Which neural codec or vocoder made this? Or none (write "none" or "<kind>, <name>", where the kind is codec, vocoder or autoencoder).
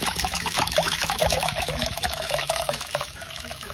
autoencoder, DAC-VAE